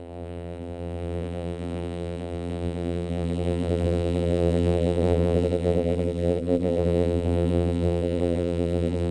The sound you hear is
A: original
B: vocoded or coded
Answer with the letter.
B